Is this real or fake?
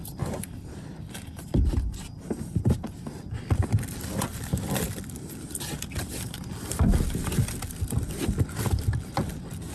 fake